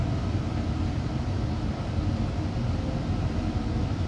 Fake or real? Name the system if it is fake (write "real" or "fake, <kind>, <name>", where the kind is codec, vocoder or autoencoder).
real